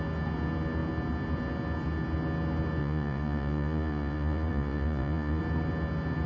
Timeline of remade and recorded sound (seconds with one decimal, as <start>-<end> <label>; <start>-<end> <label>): 0.0-2.8 recorded; 2.8-5.4 remade; 5.4-6.3 recorded